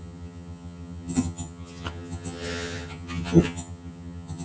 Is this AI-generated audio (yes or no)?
yes